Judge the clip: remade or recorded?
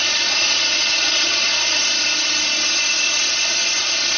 recorded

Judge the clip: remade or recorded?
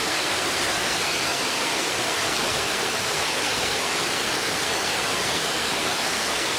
remade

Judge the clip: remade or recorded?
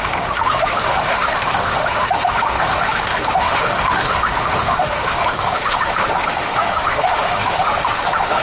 remade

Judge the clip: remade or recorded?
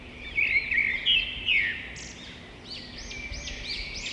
recorded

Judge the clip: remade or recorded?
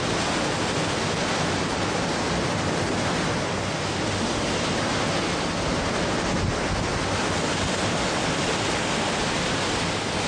recorded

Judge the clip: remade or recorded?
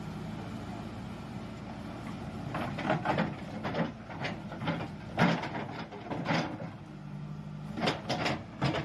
recorded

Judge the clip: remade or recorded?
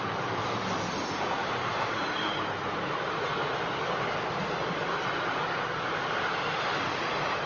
recorded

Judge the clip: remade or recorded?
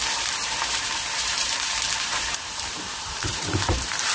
remade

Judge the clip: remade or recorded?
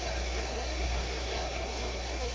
remade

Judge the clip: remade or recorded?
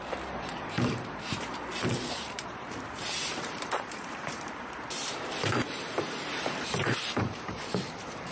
remade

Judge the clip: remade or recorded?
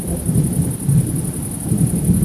recorded